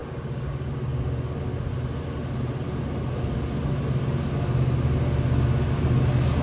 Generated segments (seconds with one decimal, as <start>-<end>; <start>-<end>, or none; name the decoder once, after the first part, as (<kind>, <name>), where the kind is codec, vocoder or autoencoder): 0.0-0.7 (codec, DAC)